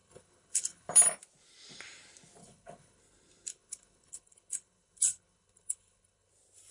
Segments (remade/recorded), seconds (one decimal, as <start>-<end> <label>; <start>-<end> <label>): 0.0-0.9 remade; 0.9-2.4 recorded; 2.4-3.0 remade; 3.0-3.5 recorded; 3.5-6.3 remade; 6.3-6.7 recorded